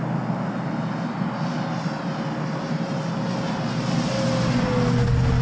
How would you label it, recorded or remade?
recorded